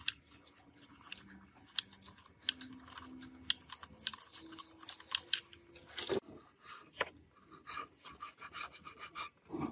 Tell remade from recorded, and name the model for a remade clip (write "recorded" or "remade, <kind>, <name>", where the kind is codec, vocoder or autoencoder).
recorded